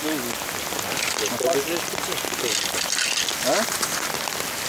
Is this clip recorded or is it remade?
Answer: recorded